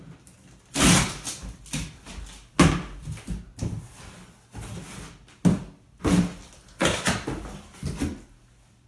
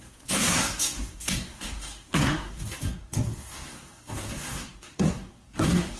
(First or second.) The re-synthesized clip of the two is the second